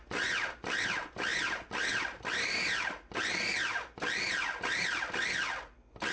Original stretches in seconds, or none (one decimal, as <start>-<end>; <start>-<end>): 0.0-6.1

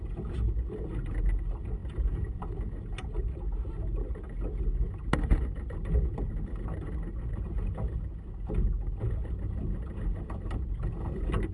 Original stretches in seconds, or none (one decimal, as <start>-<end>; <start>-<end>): 0.0-11.5

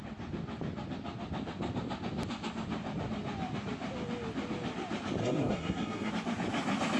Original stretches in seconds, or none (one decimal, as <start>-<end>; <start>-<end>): 0.0-5.2; 6.1-7.0